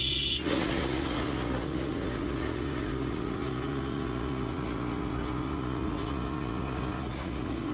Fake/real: fake